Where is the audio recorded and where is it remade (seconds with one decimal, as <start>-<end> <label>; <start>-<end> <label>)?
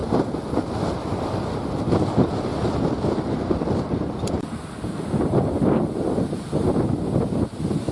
0.0-7.9 recorded